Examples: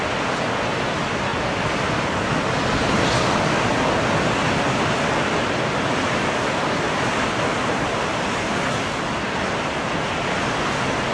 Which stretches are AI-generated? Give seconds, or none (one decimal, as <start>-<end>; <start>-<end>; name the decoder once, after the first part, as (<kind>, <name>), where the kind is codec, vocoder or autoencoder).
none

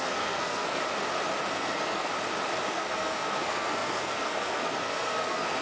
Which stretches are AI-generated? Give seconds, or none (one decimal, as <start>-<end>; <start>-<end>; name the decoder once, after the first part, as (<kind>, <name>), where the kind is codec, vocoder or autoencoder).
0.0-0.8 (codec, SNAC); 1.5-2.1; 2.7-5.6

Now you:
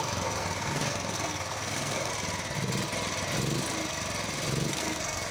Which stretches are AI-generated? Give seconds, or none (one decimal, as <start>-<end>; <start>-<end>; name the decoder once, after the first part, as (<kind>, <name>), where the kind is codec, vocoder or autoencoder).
0.0-2.1 (codec, SNAC); 4.7-5.3